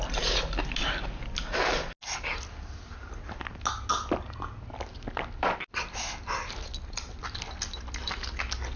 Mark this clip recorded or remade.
recorded